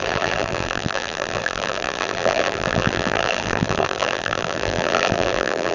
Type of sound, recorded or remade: remade